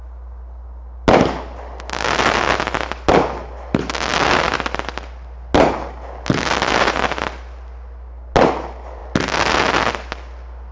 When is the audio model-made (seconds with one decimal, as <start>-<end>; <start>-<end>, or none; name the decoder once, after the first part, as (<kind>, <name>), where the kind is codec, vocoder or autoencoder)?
none